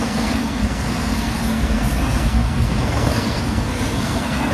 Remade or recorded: remade